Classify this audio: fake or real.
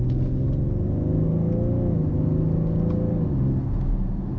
real